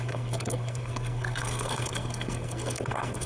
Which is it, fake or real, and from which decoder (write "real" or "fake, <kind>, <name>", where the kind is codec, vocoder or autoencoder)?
fake, codec, SNAC